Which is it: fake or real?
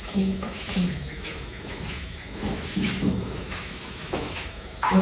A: fake